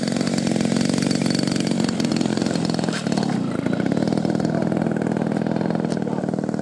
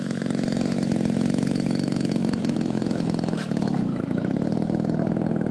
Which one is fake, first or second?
second